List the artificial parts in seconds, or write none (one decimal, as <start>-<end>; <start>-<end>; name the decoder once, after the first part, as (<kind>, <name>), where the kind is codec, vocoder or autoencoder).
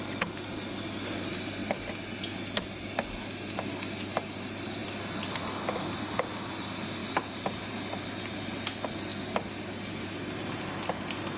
4.8-6.0 (vocoder, BigVGAN v2); 7.0-7.7